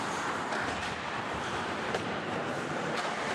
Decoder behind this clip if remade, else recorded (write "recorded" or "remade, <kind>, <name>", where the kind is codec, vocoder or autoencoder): remade, vocoder, BigVGAN v2